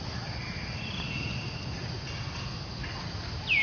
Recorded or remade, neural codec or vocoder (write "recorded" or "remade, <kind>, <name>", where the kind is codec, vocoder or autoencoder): recorded